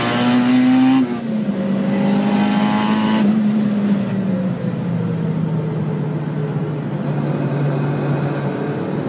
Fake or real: real